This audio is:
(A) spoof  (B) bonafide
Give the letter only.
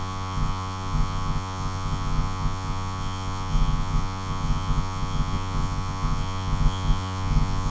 A